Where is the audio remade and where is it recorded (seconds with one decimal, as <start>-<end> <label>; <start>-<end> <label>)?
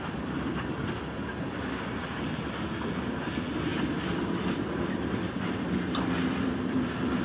0.0-3.7 recorded; 3.7-4.2 remade; 4.2-7.2 recorded